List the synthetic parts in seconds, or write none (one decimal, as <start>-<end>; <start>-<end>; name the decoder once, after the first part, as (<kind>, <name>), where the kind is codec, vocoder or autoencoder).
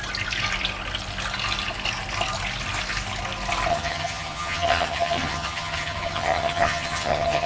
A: 3.7-7.5 (vocoder, HiFi-GAN)